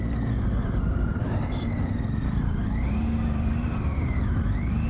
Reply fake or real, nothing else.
fake